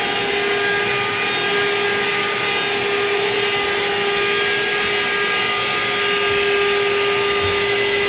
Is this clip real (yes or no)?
yes